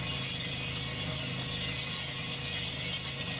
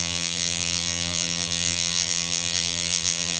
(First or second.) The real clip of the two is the first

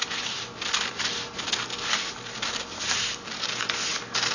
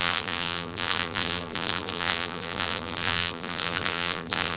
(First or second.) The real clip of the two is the first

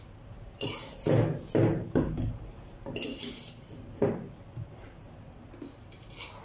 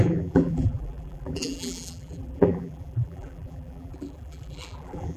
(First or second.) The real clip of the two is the first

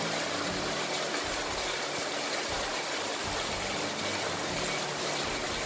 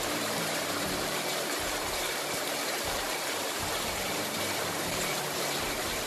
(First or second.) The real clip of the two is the first